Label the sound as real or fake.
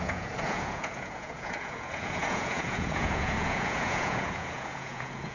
fake